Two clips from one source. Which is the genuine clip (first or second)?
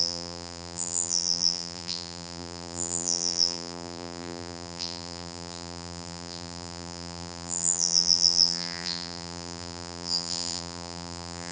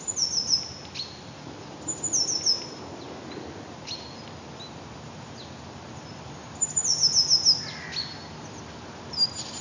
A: second